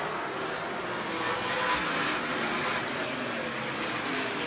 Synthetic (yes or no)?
no